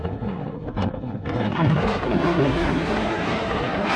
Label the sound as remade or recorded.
remade